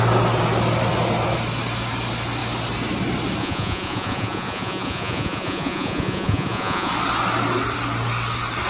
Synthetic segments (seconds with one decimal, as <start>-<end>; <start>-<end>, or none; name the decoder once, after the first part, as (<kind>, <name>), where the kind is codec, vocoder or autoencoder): 3.4-6.9 (vocoder, Vocos)